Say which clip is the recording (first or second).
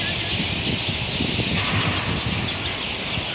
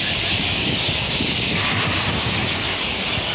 first